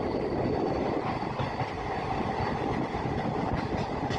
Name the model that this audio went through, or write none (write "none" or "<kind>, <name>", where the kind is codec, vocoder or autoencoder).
none